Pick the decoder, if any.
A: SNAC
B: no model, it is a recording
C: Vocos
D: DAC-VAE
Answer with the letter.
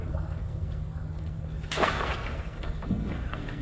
A